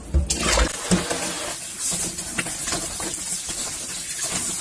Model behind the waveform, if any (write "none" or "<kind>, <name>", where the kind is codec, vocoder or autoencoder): none